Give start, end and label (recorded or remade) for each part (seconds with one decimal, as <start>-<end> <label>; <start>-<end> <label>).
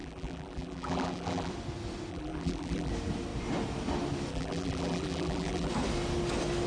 0.0-1.5 remade; 1.5-2.1 recorded; 2.1-2.9 remade; 2.9-4.3 recorded; 4.3-5.7 remade; 5.7-6.7 recorded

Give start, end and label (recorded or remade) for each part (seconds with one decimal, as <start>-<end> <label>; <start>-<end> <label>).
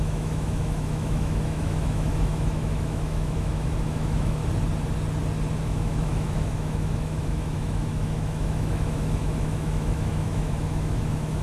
0.0-4.4 remade; 4.4-5.6 recorded; 5.6-11.4 remade